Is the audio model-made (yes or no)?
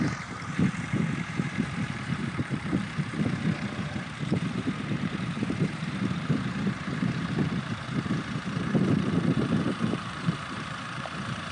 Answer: yes